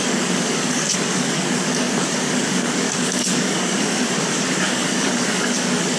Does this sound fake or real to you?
fake